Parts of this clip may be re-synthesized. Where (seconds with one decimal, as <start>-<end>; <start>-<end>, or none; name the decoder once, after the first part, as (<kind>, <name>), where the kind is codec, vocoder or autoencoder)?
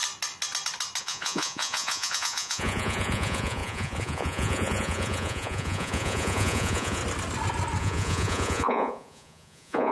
1.0-7.0 (vocoder, Vocos); 7.8-9.9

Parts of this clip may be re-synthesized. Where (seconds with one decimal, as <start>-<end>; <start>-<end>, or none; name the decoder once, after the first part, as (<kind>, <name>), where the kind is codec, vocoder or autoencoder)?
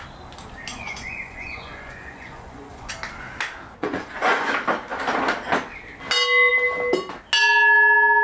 0.7-2.9 (vocoder, Vocos); 3.8-4.5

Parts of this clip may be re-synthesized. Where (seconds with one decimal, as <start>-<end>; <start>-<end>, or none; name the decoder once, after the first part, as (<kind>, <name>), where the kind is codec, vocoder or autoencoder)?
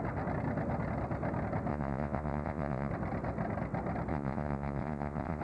1.7-2.9 (vocoder, Vocos); 4.1-5.4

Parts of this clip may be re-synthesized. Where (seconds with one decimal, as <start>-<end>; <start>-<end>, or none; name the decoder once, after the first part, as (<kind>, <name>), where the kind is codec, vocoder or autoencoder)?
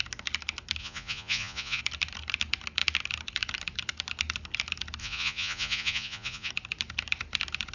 0.8-1.8 (vocoder, Vocos); 5.0-6.5